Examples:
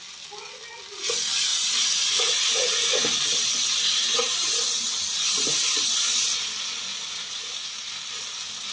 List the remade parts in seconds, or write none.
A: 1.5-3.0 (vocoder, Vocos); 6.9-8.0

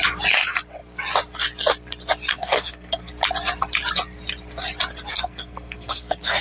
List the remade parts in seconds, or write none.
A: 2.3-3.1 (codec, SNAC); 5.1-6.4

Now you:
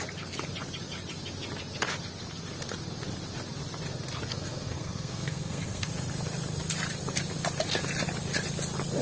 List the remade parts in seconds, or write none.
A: 4.3-5.9 (codec, SNAC)